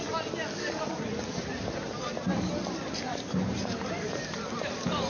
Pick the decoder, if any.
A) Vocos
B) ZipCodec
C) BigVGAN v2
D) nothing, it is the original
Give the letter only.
D